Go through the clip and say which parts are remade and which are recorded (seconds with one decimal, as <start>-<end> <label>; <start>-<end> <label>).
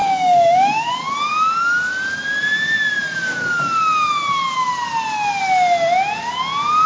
0.0-0.9 remade; 0.9-6.9 recorded